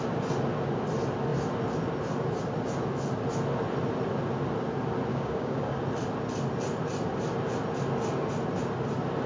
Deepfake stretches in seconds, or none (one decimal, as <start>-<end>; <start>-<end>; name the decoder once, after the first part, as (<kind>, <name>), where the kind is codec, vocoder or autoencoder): 5.1-5.8 (codec, DAC)